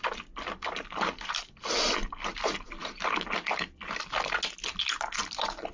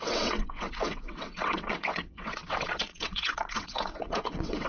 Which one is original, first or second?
first